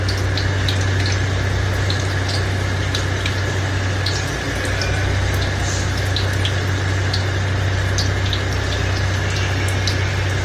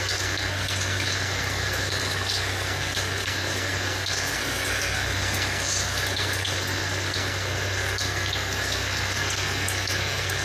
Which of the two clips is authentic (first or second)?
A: first